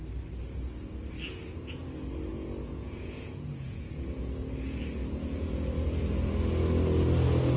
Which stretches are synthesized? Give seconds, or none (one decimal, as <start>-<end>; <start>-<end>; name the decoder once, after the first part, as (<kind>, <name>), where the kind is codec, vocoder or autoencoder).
2.3-4.3 (vocoder, Vocos); 5.0-5.6